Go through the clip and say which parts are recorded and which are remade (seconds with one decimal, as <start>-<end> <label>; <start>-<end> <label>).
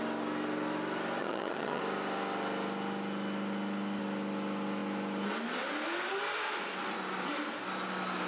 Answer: 0.0-1.2 recorded; 1.2-1.8 remade; 1.8-8.3 recorded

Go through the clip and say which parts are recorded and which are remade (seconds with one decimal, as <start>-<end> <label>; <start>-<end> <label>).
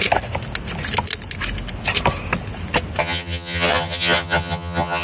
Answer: 0.0-3.0 recorded; 3.0-5.0 remade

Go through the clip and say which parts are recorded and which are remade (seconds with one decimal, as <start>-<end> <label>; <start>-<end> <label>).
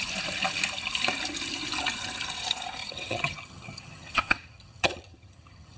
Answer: 0.0-2.8 recorded; 2.8-5.8 remade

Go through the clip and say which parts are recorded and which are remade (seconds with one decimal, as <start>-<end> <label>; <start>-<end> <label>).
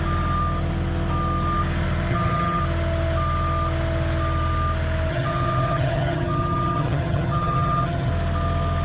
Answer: 0.0-2.1 recorded; 2.1-2.6 remade; 2.6-5.1 recorded; 5.1-8.1 remade; 8.1-8.8 recorded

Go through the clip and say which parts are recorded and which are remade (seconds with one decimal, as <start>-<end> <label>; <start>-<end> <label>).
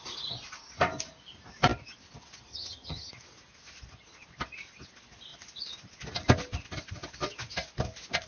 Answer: 0.0-2.5 recorded; 2.5-3.1 remade; 3.1-8.3 recorded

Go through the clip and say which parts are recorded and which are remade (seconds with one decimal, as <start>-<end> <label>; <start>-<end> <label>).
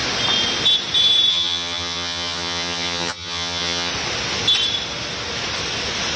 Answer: 0.0-1.3 recorded; 1.3-3.9 remade; 3.9-6.2 recorded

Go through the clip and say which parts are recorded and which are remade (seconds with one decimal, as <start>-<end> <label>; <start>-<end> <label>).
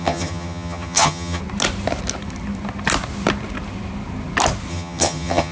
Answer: 0.0-1.4 remade; 1.4-4.7 recorded; 4.7-5.5 remade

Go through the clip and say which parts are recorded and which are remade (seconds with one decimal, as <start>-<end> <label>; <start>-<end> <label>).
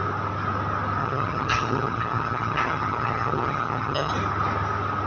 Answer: 0.0-1.0 recorded; 1.0-4.1 remade; 4.1-5.1 recorded